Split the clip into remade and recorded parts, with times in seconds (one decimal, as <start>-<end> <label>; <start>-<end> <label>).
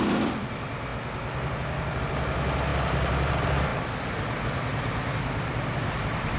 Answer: 0.0-0.9 remade; 0.9-2.0 recorded; 2.0-4.9 remade; 4.9-5.6 recorded; 5.6-6.4 remade